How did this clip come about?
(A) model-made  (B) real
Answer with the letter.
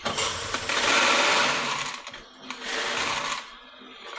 B